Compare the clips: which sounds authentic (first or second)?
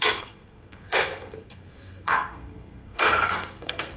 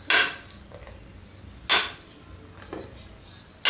second